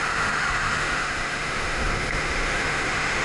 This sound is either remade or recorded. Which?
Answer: remade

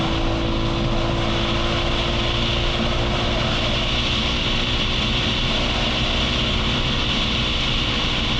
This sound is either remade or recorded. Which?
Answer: recorded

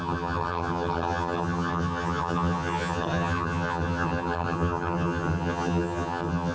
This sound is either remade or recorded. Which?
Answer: remade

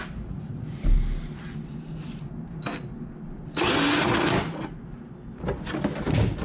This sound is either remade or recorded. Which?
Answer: recorded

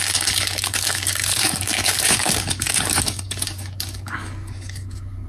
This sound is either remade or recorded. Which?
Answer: remade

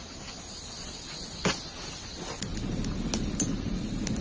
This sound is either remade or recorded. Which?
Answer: recorded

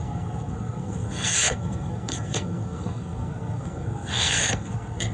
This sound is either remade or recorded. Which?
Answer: remade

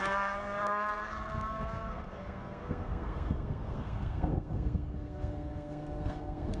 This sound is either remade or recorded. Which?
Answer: remade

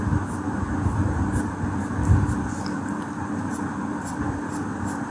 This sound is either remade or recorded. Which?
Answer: recorded